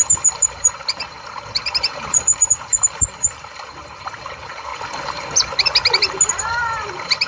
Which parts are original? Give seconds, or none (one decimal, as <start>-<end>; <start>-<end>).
4.7-6.3